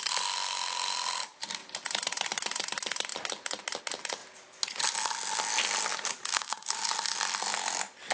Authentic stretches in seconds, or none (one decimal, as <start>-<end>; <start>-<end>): 0.0-6.3; 6.9-8.1